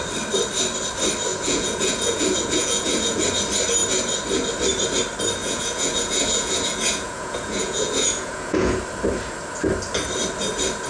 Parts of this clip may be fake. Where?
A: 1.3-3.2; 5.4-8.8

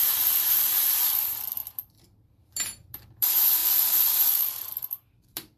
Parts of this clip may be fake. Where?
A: 0.0-5.6

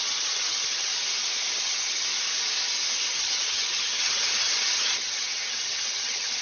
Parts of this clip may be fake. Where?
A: 0.0-0.9; 1.5-2.1; 3.1-6.4

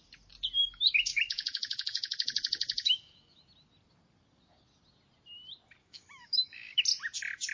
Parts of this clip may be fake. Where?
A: 0.6-3.4; 5.8-6.8

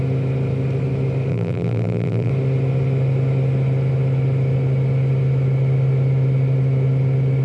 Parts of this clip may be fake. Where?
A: 1.3-2.3

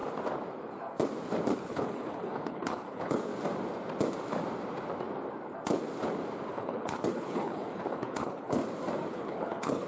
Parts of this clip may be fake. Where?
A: 1.6-3.3; 6.5-8.6; 9.1-9.9

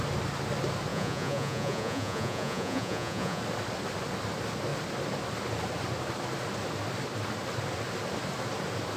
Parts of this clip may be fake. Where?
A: 0.9-3.4

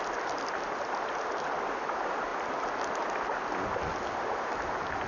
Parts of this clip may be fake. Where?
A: none